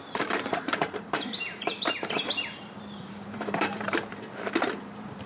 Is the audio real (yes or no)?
no